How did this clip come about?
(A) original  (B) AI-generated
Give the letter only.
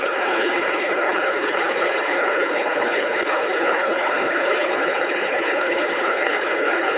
B